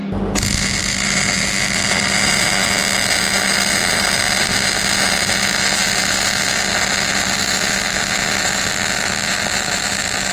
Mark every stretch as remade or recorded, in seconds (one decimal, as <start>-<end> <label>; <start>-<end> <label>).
0.0-10.3 recorded